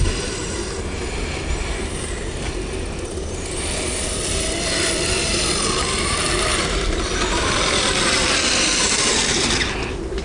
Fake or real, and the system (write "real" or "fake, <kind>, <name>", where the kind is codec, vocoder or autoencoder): real